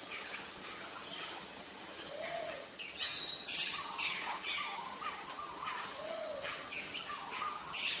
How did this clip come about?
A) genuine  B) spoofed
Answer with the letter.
B